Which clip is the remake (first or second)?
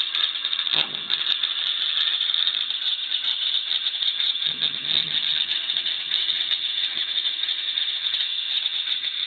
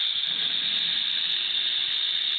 first